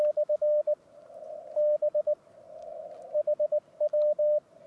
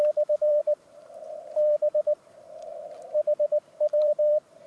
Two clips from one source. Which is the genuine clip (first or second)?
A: first